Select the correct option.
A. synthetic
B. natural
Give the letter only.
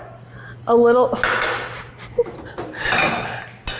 B